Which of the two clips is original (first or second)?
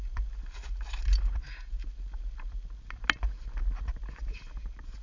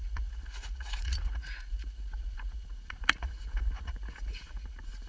first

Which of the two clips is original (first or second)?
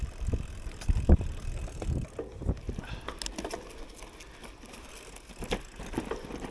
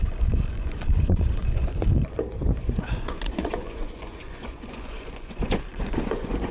first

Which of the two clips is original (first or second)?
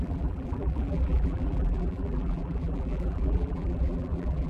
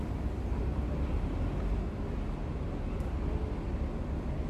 second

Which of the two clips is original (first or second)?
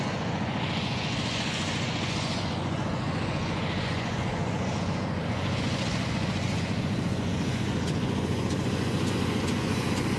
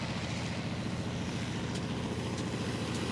second